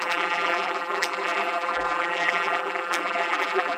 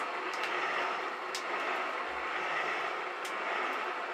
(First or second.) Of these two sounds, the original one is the second